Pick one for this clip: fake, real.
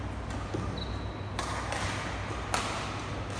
real